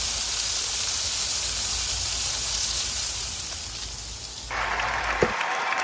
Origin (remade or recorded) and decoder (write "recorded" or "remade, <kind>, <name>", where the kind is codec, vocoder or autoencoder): recorded